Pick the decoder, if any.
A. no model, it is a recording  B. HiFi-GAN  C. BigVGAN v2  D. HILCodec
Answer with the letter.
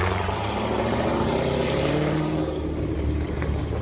C